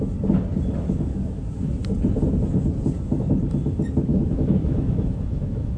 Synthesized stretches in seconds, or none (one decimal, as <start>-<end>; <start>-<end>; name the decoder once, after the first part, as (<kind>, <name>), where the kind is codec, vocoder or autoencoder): 4.1-5.8 (autoencoder, DAC-VAE)